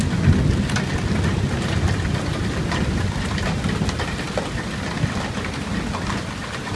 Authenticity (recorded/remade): recorded